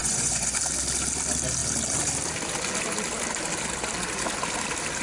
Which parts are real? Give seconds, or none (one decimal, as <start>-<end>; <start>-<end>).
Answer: 0.6-5.0